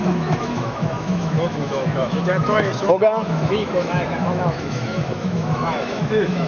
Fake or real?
fake